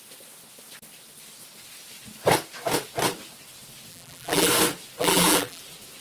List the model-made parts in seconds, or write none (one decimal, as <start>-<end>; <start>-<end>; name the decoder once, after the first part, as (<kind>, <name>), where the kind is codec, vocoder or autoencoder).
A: 3.9-4.5 (vocoder, BigVGAN v2); 5.0-5.6